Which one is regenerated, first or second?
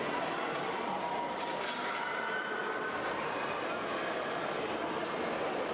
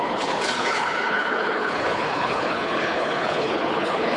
second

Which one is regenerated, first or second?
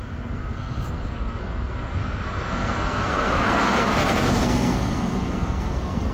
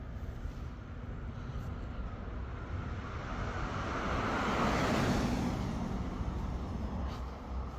first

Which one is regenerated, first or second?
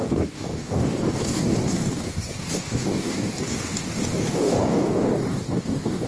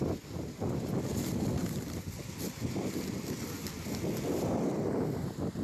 first